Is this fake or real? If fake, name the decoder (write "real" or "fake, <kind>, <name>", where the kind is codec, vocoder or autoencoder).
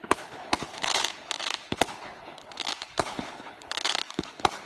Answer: fake, codec, HILCodec